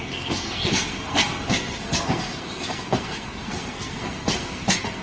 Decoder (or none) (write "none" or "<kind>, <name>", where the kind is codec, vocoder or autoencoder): codec, SNAC